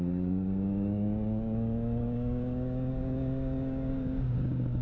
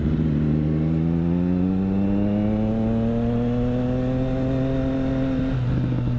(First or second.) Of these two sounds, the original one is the second